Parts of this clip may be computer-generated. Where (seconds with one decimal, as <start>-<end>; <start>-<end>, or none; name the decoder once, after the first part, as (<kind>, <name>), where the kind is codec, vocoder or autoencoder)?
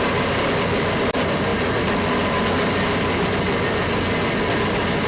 none